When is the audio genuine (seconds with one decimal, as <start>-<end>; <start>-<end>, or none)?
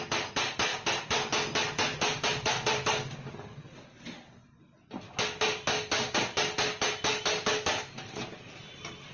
0.0-9.1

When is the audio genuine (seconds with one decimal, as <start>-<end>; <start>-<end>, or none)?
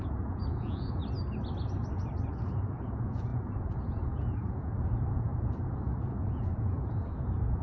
1.0-2.3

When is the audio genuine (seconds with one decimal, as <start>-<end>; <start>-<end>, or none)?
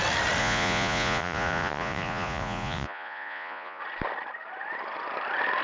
0.0-0.4; 3.8-5.6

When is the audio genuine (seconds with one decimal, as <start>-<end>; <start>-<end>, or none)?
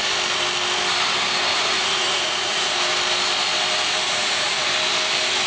0.0-1.5; 2.7-4.1; 4.7-5.5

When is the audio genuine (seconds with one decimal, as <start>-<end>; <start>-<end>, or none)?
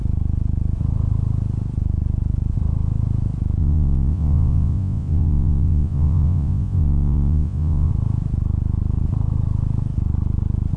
0.0-3.6; 7.9-10.8